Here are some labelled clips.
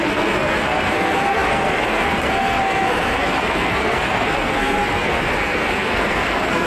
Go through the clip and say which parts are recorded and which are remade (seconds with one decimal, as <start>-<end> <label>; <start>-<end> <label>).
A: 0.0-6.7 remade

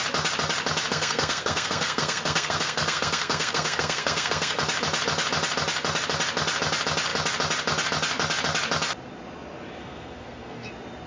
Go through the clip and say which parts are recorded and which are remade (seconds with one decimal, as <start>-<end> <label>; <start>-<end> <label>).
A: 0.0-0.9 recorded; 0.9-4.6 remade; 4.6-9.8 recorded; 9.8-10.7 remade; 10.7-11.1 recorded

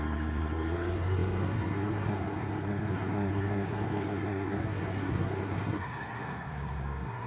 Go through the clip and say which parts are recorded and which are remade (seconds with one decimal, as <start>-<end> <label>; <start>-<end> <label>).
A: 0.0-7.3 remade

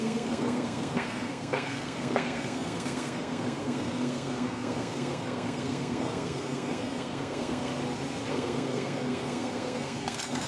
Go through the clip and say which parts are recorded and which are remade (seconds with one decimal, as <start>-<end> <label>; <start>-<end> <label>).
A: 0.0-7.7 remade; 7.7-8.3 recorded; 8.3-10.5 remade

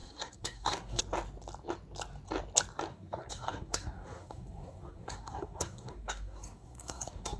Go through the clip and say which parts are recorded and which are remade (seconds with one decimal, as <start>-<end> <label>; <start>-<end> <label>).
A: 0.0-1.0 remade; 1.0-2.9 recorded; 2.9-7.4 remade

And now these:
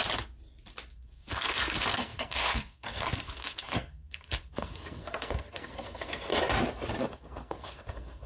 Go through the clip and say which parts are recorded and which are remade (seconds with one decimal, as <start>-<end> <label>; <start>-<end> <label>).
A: 0.0-0.9 recorded; 0.9-6.3 remade; 6.3-7.1 recorded; 7.1-8.3 remade

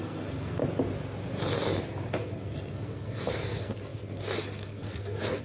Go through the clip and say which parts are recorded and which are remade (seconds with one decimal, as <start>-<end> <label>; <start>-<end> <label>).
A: 0.0-0.6 remade; 0.6-2.1 recorded; 2.1-5.4 remade